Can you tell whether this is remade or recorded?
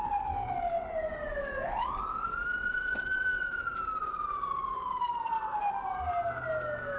recorded